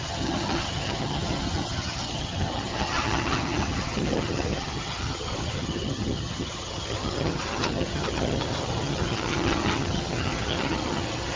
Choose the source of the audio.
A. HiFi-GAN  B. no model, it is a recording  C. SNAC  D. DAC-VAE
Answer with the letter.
A